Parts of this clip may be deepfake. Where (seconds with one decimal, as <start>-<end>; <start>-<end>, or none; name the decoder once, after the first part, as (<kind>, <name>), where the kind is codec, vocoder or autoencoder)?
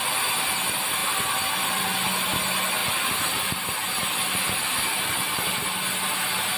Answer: 2.8-3.3 (vocoder, BigVGAN v2)